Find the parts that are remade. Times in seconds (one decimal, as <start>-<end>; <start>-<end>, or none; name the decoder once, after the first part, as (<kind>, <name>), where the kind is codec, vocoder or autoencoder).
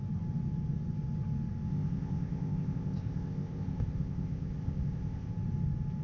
1.7-5.3 (codec, ZipCodec)